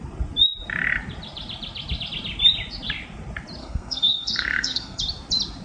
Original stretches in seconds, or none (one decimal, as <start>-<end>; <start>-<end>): 0.0-3.6; 5.0-5.6